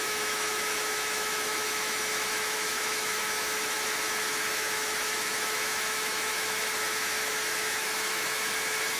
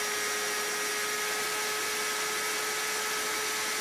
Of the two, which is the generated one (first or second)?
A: first